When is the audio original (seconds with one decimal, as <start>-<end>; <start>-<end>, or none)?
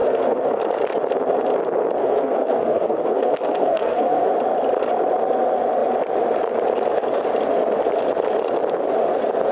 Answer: 0.6-2.0; 4.3-9.5